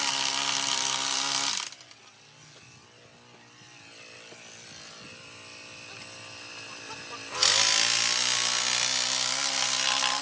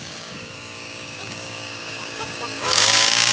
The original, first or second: first